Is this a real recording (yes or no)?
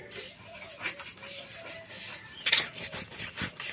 no